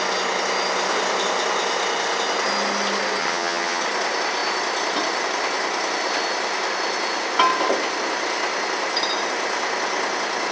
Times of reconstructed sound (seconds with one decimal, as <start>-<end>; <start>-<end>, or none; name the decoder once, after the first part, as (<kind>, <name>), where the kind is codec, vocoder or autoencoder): 3.2-3.8 (vocoder, HiFi-GAN)

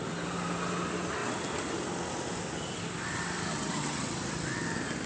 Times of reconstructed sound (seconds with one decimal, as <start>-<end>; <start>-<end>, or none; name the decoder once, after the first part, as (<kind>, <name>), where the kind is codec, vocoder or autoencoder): 3.5-4.0 (vocoder, HiFi-GAN)

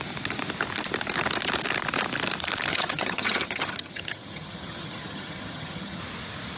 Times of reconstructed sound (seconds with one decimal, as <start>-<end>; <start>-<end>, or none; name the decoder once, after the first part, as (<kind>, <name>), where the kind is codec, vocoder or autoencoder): 2.7-6.0 (vocoder, HiFi-GAN)

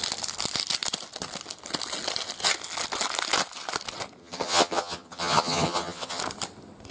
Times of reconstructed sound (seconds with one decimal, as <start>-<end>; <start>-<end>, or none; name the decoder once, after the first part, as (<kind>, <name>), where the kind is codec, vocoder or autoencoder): 4.2-6.2 (vocoder, HiFi-GAN)

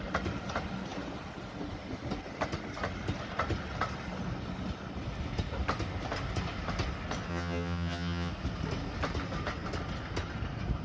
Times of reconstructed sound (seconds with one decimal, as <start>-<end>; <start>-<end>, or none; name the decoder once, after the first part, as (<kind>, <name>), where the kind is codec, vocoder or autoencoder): 7.3-8.3 (vocoder, HiFi-GAN)

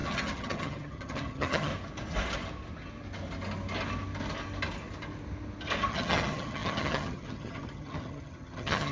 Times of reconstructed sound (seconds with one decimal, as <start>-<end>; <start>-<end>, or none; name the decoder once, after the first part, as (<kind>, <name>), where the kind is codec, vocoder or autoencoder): 0.0-1.7 (vocoder, HiFi-GAN); 5.9-8.9

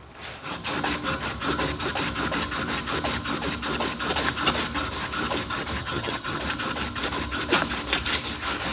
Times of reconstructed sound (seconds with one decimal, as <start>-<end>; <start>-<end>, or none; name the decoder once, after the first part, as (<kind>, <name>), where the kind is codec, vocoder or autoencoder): 5.8-6.4 (vocoder, HiFi-GAN)

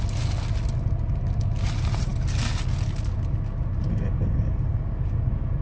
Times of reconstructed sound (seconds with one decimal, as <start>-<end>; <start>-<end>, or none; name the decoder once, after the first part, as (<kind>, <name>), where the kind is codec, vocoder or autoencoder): none